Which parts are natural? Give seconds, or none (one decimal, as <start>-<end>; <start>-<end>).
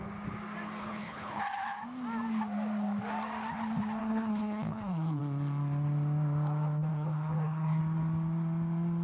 0.0-0.8; 1.4-4.0; 5.2-6.9; 7.8-9.0